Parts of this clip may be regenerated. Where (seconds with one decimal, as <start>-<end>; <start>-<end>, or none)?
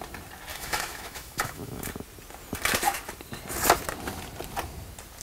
0.5-1.9